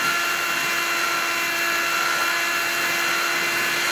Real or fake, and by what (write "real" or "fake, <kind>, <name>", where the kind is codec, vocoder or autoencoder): real